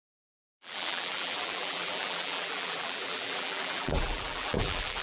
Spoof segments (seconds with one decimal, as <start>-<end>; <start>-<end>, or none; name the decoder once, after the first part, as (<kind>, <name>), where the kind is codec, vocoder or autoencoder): 0.0-5.0 (vocoder, BigVGAN v2)